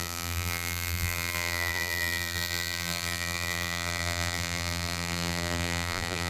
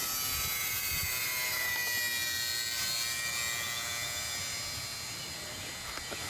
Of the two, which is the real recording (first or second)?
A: second